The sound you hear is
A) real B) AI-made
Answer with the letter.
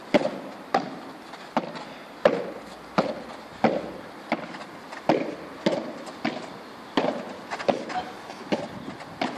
A